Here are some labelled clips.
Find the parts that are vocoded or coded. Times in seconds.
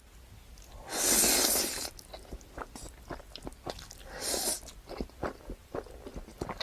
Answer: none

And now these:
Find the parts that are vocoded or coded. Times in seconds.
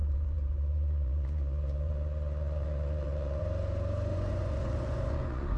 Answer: 0.0-3.4 (vocoder, Vocos); 4.1-5.6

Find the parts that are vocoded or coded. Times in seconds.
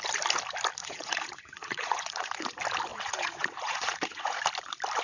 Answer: 0.8-2.3 (vocoder, Vocos); 2.9-4.4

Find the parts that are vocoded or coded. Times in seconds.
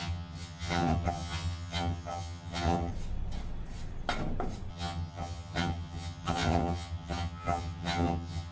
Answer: 0.0-2.9 (vocoder, HiFi-GAN); 4.7-8.5